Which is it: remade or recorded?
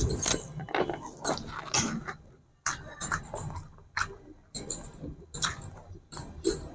recorded